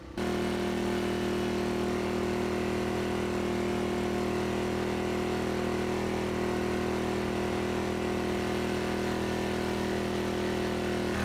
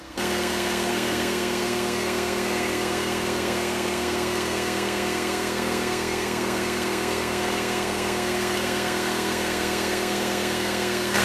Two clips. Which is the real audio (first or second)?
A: first